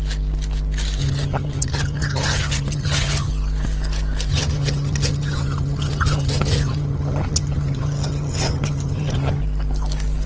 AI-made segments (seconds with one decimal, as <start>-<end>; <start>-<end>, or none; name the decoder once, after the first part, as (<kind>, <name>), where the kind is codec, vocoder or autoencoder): 1.0-3.3 (vocoder, HiFi-GAN); 4.3-9.4